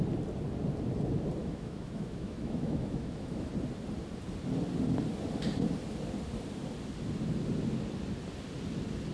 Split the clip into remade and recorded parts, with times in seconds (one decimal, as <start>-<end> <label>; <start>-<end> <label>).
0.0-1.4 recorded; 1.4-3.5 remade; 3.5-9.1 recorded